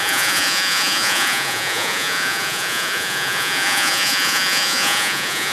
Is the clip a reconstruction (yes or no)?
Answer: yes